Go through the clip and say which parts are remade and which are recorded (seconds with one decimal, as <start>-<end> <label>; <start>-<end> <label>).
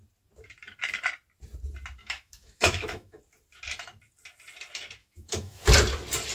0.0-2.0 recorded; 2.0-3.2 remade; 3.2-5.0 recorded; 5.0-5.6 remade; 5.6-6.3 recorded